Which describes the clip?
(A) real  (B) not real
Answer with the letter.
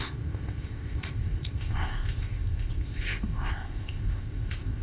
B